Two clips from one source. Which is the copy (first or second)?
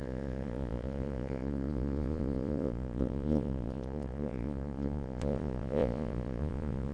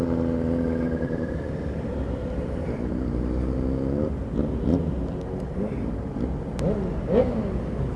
first